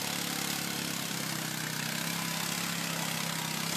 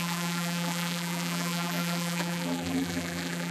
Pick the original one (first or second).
first